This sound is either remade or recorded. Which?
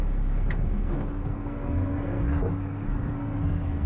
remade